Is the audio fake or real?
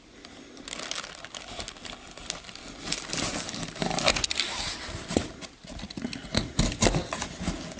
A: real